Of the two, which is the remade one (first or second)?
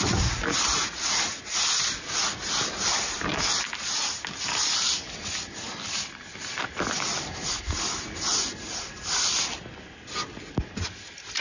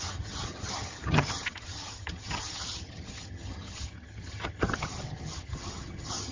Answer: second